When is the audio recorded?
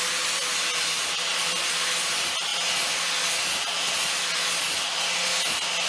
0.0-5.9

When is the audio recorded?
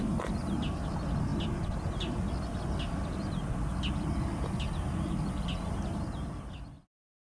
0.0-7.4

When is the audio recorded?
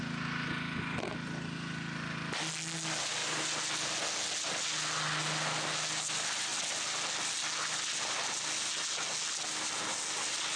0.0-10.6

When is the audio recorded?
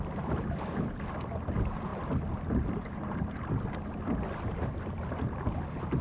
0.0-1.9; 5.5-6.0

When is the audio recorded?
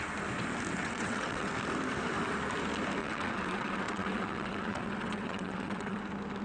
0.0-0.8; 1.5-3.0; 6.0-6.4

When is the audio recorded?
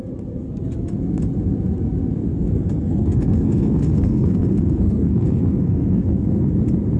0.0-2.2; 6.4-7.0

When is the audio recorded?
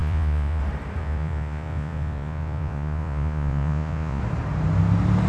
0.6-1.0; 4.2-5.3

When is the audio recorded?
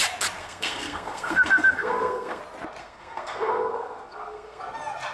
0.0-0.4; 2.4-2.8; 4.6-5.1